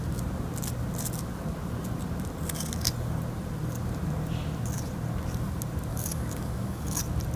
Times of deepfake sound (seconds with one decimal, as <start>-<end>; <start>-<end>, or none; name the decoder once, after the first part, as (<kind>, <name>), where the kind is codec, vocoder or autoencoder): 5.9-7.0 (codec, DAC)